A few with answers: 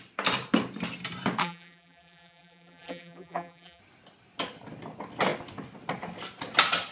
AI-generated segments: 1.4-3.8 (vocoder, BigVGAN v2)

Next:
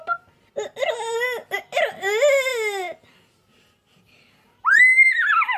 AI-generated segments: none

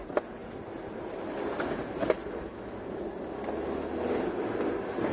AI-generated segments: 0.4-1.5 (vocoder, BigVGAN v2)

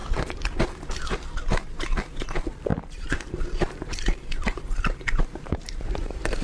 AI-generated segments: 1.5-6.4 (vocoder, BigVGAN v2)

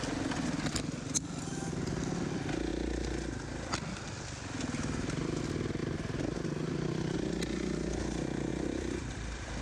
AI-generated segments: 8.5-9.6 (vocoder, BigVGAN v2)

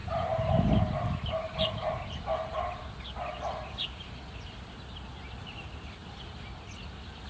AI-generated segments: 0.0-4.1 (vocoder, BigVGAN v2); 6.0-7.3

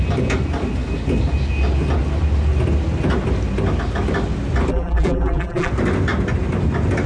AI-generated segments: 4.7-5.7 (vocoder, BigVGAN v2)